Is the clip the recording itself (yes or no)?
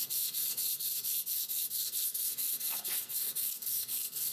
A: no